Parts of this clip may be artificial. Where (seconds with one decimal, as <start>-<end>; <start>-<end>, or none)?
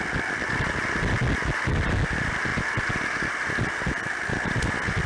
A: none